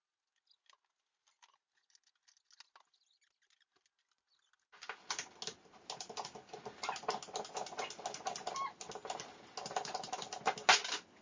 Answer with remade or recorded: recorded